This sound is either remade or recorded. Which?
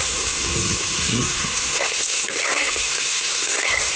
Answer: remade